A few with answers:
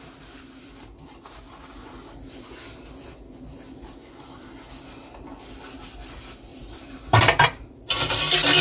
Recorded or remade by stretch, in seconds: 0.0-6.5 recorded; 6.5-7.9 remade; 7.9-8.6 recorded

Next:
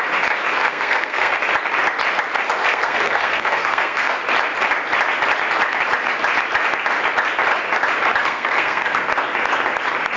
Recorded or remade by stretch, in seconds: 0.0-0.5 recorded; 0.5-1.4 remade; 1.4-2.6 recorded; 2.6-4.2 remade; 4.2-8.2 recorded; 8.2-9.1 remade; 9.1-10.2 recorded

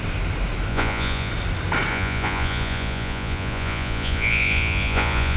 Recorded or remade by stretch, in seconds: 0.0-0.7 recorded; 0.7-1.3 remade; 1.3-1.9 recorded; 1.9-5.4 remade

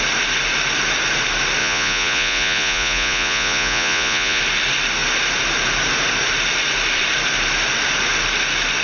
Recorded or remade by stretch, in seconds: 0.0-1.6 recorded; 1.6-4.4 remade; 4.4-8.8 recorded